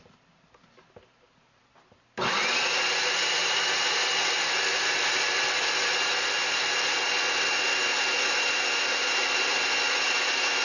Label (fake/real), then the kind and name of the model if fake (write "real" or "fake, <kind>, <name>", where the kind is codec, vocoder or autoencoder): real